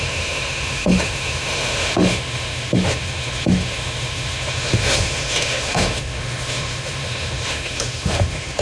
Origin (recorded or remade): remade